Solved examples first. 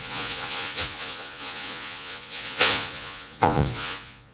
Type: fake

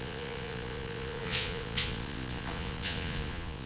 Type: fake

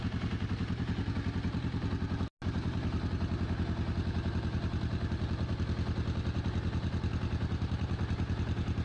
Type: real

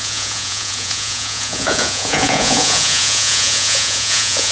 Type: fake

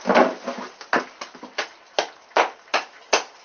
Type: real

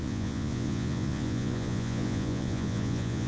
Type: fake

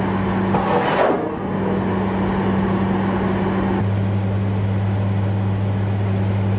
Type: real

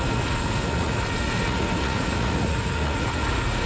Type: fake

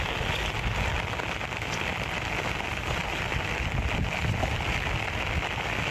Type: real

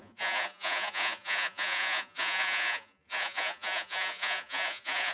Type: fake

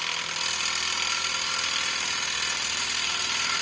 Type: real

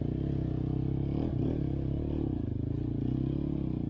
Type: real